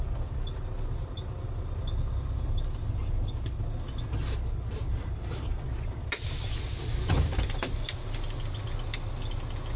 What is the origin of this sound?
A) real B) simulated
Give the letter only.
A